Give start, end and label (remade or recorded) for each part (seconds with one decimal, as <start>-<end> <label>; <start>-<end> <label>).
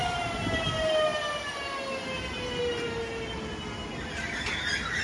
0.0-5.0 recorded